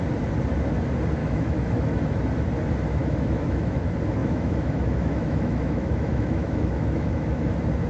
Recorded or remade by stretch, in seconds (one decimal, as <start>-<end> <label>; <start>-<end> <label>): 0.0-1.2 recorded; 1.2-2.0 remade; 2.0-3.0 recorded; 3.0-3.8 remade; 3.8-4.2 recorded; 4.2-7.5 remade; 7.5-7.9 recorded